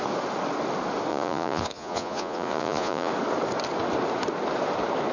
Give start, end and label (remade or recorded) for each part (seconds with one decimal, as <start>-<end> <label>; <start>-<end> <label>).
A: 0.0-1.1 recorded; 1.1-3.1 remade; 3.1-5.1 recorded